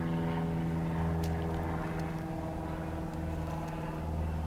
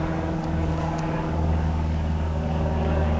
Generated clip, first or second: second